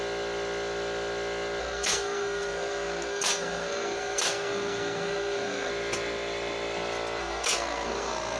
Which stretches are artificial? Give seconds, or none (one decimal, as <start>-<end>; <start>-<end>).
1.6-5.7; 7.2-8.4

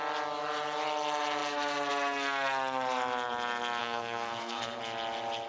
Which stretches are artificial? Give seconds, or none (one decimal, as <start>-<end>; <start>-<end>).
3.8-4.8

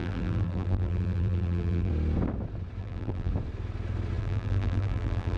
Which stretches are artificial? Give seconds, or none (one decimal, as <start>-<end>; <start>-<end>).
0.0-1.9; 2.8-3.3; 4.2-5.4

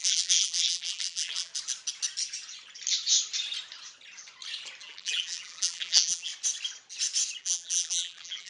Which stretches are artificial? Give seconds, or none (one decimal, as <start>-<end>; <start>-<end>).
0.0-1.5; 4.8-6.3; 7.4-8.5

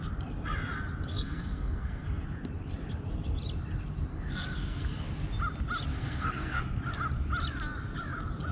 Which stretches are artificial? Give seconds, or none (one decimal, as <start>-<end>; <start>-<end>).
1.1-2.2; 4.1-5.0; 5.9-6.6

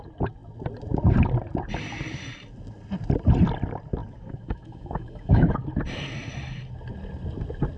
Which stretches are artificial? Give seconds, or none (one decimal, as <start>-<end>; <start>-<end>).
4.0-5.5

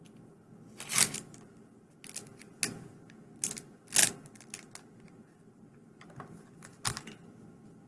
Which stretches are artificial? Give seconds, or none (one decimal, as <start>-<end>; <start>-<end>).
none

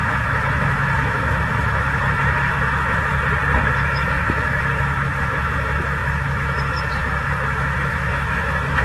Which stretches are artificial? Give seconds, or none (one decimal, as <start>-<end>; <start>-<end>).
0.0-3.1; 3.6-8.8